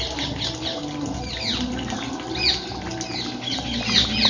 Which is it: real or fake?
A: real